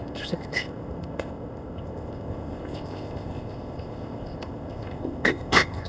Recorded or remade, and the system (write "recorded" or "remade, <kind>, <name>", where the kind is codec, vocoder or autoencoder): remade, codec, ZipCodec